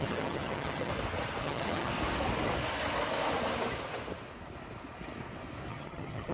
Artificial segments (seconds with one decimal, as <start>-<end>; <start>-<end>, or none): 0.0-0.9; 1.4-1.9; 5.7-6.3